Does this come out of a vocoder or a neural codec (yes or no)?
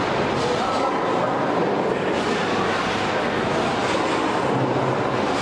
no